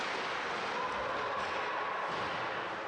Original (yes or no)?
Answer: yes